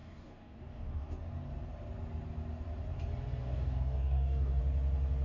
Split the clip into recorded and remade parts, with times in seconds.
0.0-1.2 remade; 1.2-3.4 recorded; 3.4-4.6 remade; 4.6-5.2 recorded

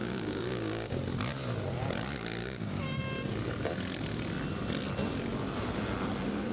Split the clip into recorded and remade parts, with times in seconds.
0.0-1.0 remade; 1.0-2.4 recorded; 2.4-3.0 remade; 3.0-6.5 recorded

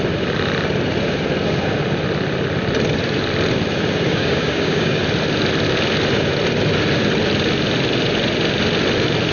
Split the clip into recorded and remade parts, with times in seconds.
0.0-4.1 recorded; 4.1-5.0 remade; 5.0-9.3 recorded

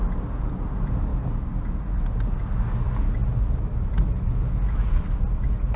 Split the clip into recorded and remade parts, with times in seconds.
0.0-1.1 recorded; 1.1-1.8 remade; 1.8-5.8 recorded

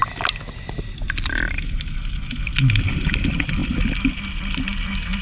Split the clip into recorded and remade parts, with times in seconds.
0.0-5.2 recorded

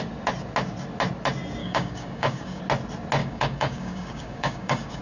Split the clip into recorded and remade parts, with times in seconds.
0.0-1.6 recorded; 1.6-2.6 remade; 2.6-3.2 recorded; 3.2-5.0 remade